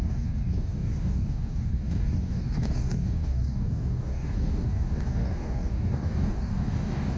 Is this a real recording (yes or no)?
no